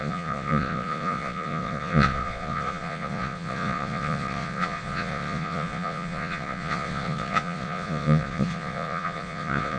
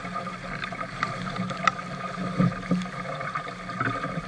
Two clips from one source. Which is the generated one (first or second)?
first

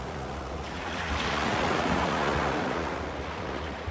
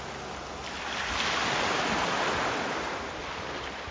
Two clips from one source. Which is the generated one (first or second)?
first